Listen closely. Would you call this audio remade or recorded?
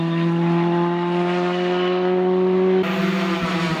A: recorded